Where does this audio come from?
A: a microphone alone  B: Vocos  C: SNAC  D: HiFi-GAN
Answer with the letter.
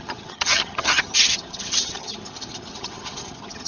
D